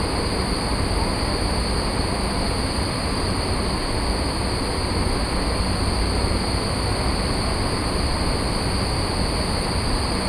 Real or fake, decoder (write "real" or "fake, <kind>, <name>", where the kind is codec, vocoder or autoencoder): real